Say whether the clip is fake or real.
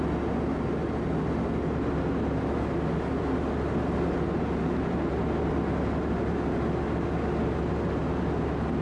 real